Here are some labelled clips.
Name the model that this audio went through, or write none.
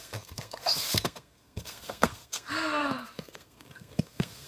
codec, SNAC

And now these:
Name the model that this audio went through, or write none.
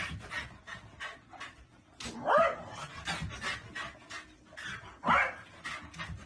none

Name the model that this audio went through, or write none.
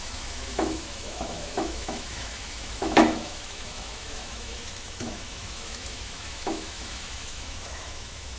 autoencoder, DAC-VAE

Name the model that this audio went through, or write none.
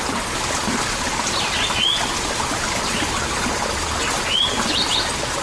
none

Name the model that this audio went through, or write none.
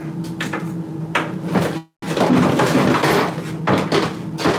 none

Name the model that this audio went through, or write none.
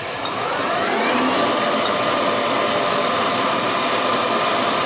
vocoder, BigVGAN v2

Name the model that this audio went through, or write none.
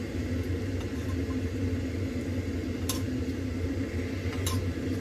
none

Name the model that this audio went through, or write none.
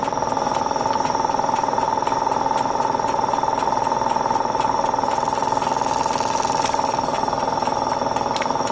none